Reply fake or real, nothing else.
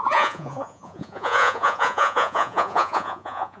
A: fake